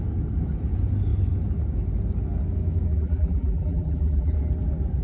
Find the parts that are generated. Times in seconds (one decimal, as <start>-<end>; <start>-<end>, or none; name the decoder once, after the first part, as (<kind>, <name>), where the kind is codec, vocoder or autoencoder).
2.9-4.3 (vocoder, BigVGAN v2)